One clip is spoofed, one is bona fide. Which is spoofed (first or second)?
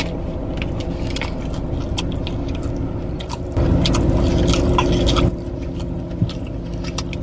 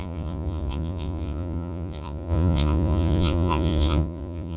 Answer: second